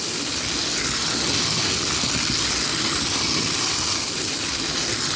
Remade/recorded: recorded